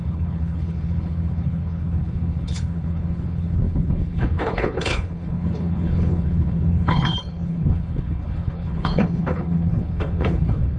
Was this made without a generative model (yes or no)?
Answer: no